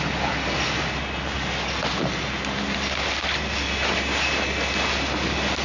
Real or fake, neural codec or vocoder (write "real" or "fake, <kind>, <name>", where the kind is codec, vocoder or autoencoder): real